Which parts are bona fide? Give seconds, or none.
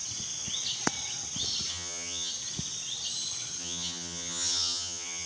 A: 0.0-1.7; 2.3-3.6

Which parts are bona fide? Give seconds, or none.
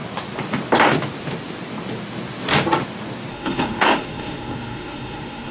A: 0.0-3.3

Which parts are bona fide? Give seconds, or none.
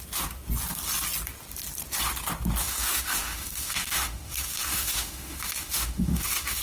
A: 0.0-2.6